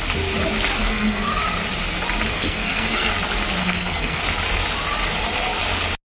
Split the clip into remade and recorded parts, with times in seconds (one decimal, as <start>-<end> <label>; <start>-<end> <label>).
0.0-0.8 recorded; 0.8-1.4 remade; 1.4-2.3 recorded; 2.3-3.1 remade; 3.1-3.6 recorded; 3.6-4.2 remade; 4.2-6.1 recorded